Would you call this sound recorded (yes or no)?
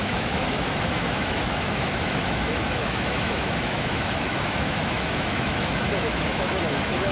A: no